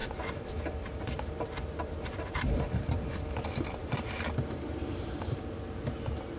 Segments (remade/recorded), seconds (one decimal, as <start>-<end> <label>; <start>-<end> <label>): 0.0-2.2 remade; 2.2-3.8 recorded; 3.8-4.7 remade; 4.7-6.4 recorded